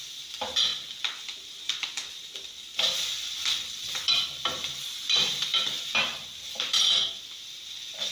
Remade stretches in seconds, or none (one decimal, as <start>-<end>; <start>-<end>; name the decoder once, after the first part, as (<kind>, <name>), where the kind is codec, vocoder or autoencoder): 0.0-0.7 (vocoder, BigVGAN v2); 1.4-8.1

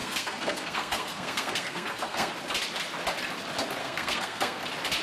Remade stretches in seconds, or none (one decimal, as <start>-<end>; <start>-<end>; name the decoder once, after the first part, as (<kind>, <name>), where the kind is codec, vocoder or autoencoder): 0.0-2.3 (codec, SNAC); 3.8-4.6

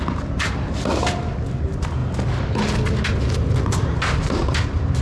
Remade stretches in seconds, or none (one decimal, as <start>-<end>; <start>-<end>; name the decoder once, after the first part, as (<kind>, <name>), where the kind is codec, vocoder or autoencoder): none

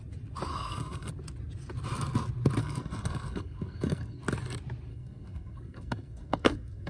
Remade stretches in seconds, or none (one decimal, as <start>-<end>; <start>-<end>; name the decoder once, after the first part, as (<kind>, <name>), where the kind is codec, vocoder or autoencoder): 0.5-1.1 (codec, SNAC); 2.6-4.2; 4.9-6.9

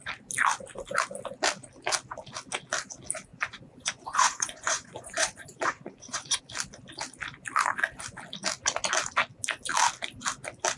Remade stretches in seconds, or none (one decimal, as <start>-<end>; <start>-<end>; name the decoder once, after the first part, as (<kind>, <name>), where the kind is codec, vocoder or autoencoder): 3.3-6.4 (vocoder, Vocos)

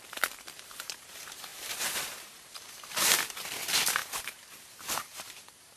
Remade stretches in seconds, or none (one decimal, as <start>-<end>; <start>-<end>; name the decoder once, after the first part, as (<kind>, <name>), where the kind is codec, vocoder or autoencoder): 0.0-5.8 (vocoder, BigVGAN v2)